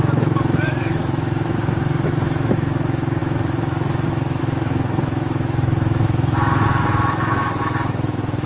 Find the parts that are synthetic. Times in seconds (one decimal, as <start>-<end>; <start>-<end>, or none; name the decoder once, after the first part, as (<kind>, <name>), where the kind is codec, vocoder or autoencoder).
0.0-8.5 (autoencoder, DAC-VAE)